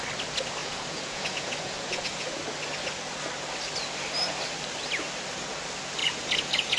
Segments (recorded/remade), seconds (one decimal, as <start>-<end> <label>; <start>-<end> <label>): 0.0-0.6 recorded; 0.6-2.4 remade; 2.4-6.0 recorded; 6.0-6.8 remade